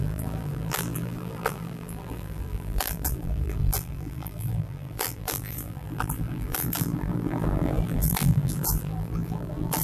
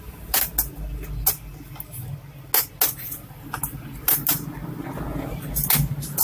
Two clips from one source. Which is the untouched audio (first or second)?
second